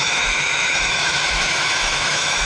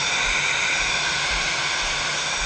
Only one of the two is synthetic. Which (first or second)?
first